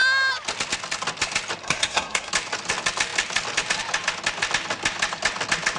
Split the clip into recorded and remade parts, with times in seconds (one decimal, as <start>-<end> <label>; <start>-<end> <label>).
0.0-1.6 recorded; 1.6-2.3 remade; 2.3-5.8 recorded